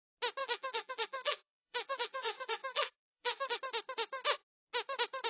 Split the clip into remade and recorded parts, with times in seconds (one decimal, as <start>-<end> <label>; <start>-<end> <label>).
0.0-0.4 recorded; 0.4-3.6 remade; 3.6-5.3 recorded